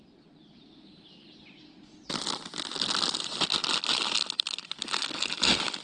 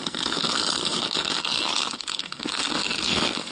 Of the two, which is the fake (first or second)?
second